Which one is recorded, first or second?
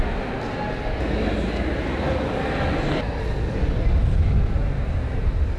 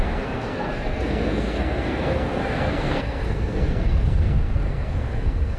first